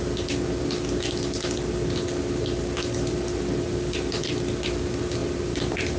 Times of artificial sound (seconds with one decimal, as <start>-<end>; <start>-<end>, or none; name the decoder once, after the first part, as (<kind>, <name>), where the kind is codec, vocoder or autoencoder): 5.2-6.0 (vocoder, BigVGAN v2)